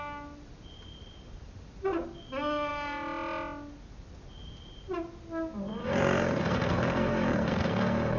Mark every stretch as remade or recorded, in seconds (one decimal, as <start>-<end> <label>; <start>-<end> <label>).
0.0-5.8 recorded; 5.8-8.2 remade